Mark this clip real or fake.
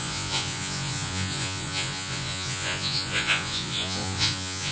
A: fake